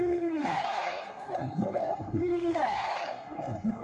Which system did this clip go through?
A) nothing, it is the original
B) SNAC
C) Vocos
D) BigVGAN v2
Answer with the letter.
B